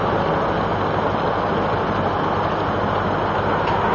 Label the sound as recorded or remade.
recorded